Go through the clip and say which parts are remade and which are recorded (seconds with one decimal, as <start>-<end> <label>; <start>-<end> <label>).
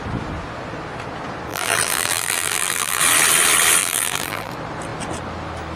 0.0-1.5 recorded; 1.5-3.0 remade; 3.0-3.8 recorded; 3.8-4.5 remade; 4.5-5.8 recorded